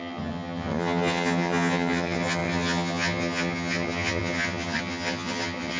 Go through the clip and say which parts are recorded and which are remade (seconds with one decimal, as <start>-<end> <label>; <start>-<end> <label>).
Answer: 0.0-5.8 remade